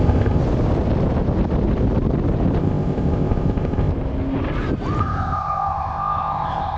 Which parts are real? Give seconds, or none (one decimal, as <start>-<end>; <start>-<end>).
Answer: 0.4-2.6; 3.9-5.0